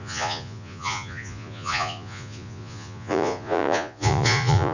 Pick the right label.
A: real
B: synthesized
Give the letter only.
B